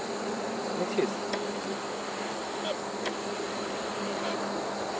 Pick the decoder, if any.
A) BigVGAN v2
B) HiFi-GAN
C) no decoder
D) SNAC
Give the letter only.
C